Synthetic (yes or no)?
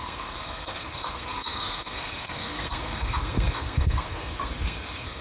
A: yes